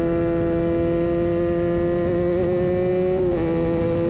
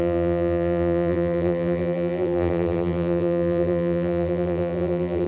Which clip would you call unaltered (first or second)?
first